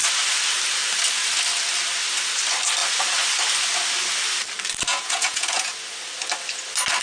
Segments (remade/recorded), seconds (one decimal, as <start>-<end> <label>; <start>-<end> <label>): 0.0-4.9 recorded; 4.9-5.7 remade; 5.7-7.0 recorded